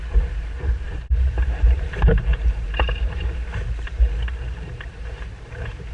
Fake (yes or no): yes